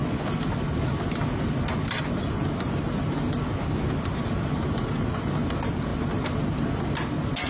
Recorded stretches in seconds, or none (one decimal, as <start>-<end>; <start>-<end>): 0.0-7.5